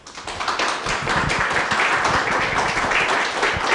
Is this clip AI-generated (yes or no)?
no